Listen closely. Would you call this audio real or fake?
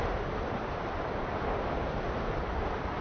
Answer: real